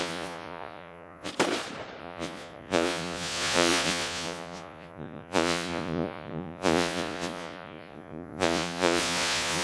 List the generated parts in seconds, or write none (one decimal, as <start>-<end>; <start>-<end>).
0.0-1.3; 2.0-9.6

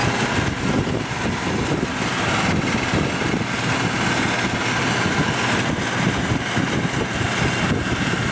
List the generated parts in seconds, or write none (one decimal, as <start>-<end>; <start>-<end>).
none

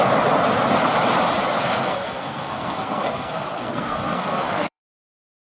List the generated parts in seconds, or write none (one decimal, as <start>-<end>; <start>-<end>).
1.7-4.8

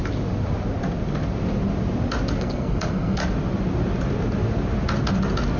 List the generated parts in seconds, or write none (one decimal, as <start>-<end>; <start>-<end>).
2.4-3.2